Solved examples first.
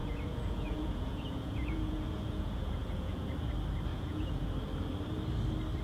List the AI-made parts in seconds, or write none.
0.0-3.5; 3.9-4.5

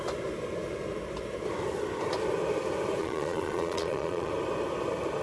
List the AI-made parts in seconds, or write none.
3.0-4.3

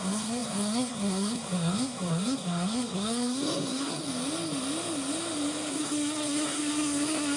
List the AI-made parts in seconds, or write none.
0.0-4.0; 5.7-7.4

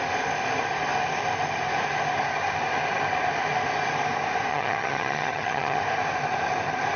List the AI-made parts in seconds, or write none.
4.5-5.8

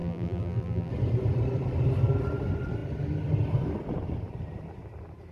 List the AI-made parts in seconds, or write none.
0.0-0.9

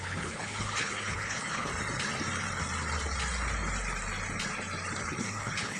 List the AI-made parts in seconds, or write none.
0.0-1.7; 5.2-5.8

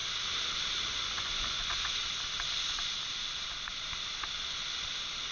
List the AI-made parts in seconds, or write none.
0.9-2.0

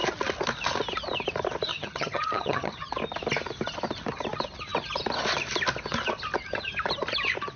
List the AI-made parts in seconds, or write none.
1.7-2.9